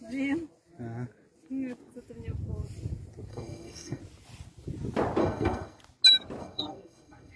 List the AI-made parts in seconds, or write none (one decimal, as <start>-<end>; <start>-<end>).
3.3-4.0; 5.2-5.8; 6.4-7.4